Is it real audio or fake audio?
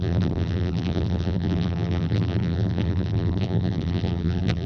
fake